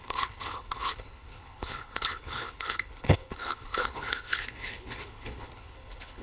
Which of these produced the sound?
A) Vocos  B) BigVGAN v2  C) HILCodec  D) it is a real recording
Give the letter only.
C